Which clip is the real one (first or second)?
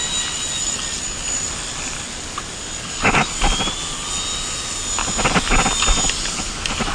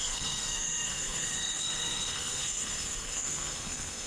first